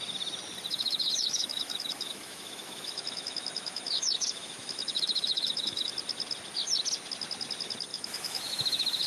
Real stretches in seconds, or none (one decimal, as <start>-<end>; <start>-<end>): 0.0-0.7; 5.9-7.9